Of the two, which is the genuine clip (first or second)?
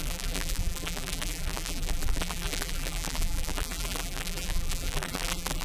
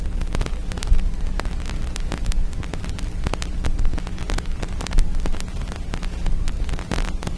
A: second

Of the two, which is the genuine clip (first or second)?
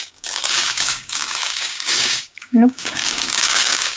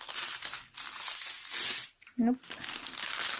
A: second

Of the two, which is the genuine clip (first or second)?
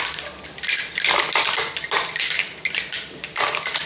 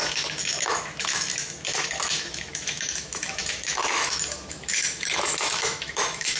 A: first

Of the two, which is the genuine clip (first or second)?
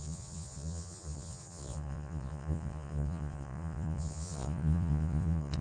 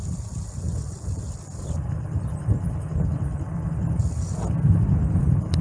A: second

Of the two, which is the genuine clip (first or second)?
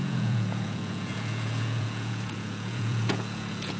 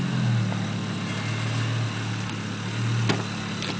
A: second